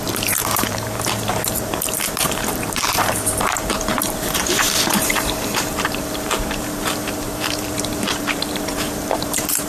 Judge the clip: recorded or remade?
remade